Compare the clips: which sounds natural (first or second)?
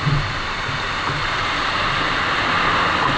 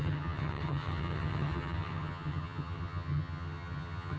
first